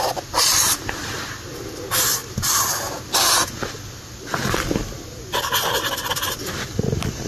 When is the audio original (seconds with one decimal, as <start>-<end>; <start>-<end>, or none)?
0.0-7.3